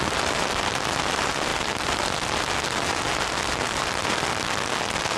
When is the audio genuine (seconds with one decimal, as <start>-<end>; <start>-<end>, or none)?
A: 0.0-5.2